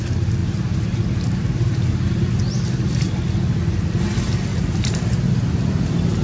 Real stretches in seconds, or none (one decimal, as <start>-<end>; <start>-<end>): 0.0-0.4; 2.4-4.5; 5.3-6.2